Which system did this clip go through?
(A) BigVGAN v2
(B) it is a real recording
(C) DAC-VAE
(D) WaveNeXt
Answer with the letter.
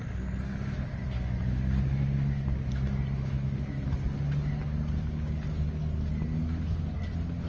B